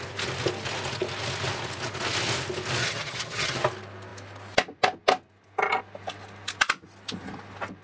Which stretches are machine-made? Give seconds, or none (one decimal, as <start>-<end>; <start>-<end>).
2.8-3.6